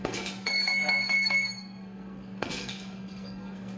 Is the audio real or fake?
fake